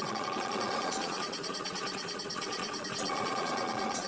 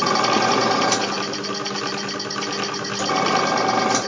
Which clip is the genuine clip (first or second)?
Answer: second